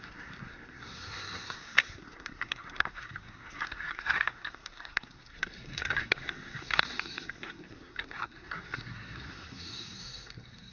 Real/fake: fake